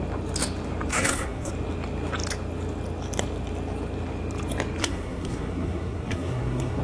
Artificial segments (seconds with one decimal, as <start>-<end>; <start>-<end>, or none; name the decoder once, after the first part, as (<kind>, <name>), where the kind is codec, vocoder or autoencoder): 0.9-1.5 (codec, SNAC); 4.8-6.8